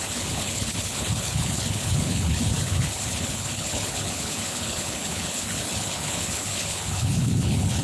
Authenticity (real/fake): fake